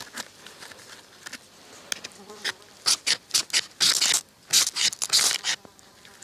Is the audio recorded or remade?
recorded